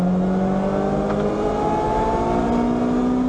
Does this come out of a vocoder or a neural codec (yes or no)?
no